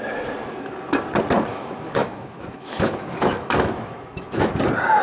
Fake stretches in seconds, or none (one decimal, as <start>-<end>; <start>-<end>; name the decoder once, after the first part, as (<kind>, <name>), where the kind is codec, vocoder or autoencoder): 1.5-4.5 (autoencoder, DAC-VAE)